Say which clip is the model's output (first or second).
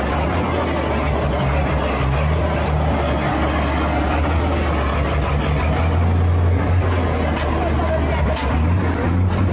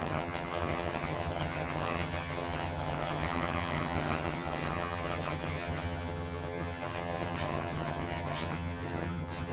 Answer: second